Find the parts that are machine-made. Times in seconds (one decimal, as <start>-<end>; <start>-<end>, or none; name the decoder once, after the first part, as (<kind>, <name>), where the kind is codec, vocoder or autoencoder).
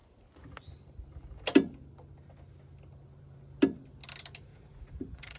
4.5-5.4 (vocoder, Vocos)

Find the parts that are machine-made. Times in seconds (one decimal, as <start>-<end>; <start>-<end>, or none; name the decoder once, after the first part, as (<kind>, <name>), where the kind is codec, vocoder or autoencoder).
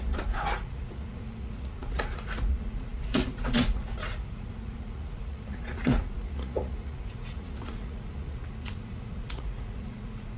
0.0-10.4 (vocoder, Vocos)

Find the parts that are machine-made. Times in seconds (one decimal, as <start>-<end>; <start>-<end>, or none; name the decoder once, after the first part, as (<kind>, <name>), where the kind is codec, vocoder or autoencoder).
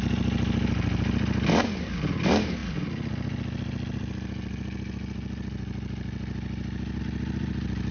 none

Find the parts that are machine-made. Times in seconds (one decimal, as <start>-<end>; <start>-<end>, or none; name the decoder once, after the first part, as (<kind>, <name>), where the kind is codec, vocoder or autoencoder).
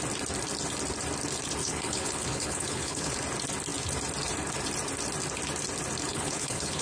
1.6-3.2 (codec, HILCodec); 6.1-6.8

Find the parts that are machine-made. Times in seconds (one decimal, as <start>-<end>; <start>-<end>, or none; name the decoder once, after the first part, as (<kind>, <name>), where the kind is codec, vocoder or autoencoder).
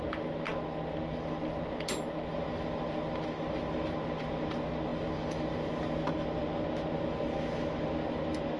none